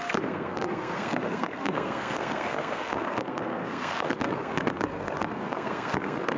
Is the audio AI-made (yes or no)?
yes